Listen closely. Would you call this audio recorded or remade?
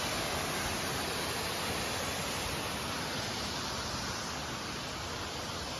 recorded